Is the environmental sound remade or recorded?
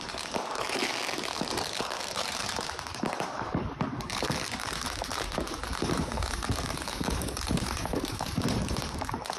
remade